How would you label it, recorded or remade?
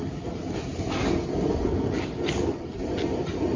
recorded